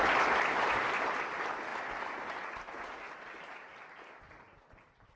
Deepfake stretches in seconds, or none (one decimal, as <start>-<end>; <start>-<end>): none

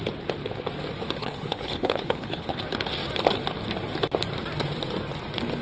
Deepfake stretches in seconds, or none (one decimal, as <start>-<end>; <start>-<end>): 1.2-2.6